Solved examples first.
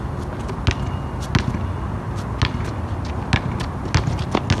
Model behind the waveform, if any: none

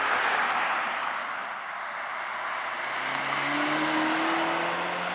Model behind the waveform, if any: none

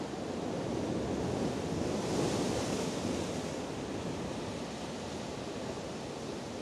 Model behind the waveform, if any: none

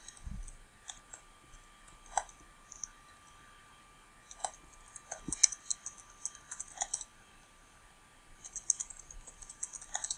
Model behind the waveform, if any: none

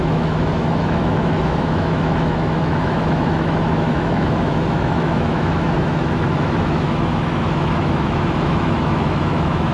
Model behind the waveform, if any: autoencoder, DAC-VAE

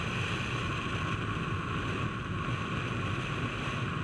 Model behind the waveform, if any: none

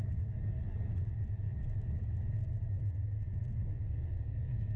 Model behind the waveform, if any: none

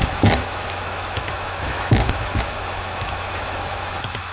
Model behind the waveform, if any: autoencoder, DAC-VAE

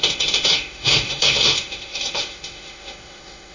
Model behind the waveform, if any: autoencoder, DAC-VAE